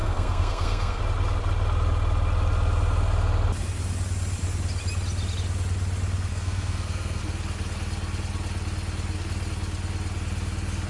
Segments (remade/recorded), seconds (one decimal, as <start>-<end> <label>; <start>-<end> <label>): 0.0-1.0 remade; 1.0-6.3 recorded; 6.3-7.2 remade; 7.2-10.9 recorded